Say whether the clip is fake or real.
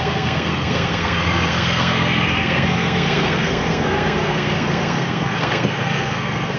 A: fake